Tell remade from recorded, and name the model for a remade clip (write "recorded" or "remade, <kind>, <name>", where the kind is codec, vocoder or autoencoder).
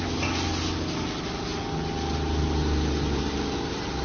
recorded